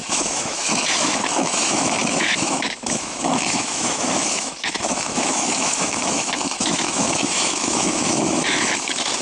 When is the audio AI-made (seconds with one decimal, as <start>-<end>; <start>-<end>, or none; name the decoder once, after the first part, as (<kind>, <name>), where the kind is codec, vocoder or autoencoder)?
0.0-9.2 (autoencoder, DAC-VAE)